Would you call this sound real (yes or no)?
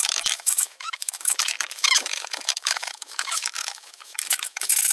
no